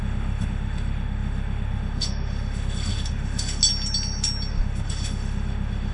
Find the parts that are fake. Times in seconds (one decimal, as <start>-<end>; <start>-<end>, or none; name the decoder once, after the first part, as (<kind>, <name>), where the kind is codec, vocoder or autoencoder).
0.0-3.6 (autoencoder, DAC-VAE); 4.5-5.9